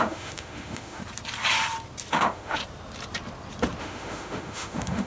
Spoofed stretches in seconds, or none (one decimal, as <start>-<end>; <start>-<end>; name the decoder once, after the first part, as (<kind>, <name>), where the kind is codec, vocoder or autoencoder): 0.0-1.0 (autoencoder, DAC-VAE); 2.1-2.6; 3.8-5.1